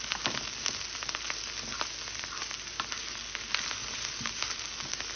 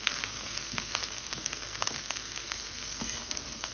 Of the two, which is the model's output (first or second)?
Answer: second